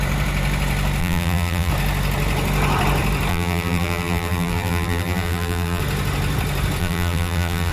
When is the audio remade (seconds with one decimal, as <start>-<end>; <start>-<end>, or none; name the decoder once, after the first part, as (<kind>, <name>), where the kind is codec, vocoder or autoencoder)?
1.0-1.7 (vocoder, BigVGAN v2); 3.3-5.8; 6.8-7.7